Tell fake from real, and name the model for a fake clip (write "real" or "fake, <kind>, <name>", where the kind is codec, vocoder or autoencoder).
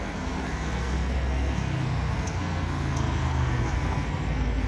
fake, codec, SNAC